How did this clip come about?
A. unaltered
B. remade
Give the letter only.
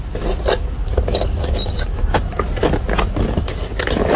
A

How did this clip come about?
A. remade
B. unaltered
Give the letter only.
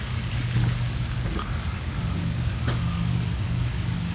A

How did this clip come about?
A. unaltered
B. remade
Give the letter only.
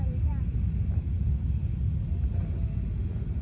A